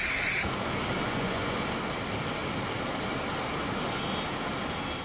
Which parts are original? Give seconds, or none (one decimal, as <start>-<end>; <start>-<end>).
0.0-1.0; 1.6-5.0